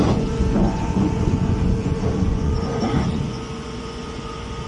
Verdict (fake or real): fake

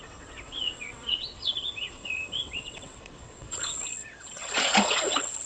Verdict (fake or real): fake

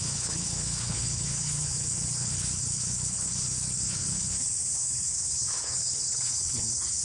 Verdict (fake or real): fake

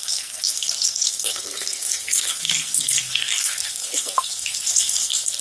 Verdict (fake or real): fake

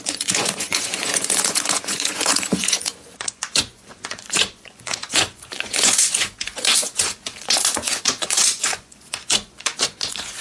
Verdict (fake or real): fake